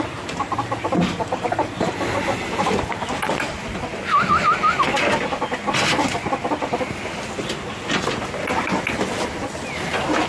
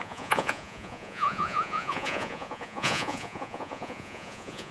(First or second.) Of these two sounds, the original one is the first